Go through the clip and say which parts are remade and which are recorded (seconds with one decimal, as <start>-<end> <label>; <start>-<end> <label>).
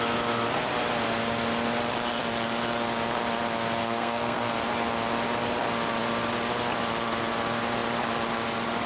0.0-3.8 recorded; 3.8-4.5 remade; 4.5-8.9 recorded